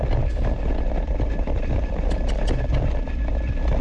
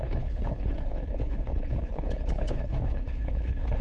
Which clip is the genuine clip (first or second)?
first